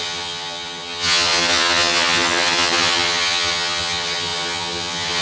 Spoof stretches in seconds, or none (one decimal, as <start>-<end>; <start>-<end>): 0.0-5.2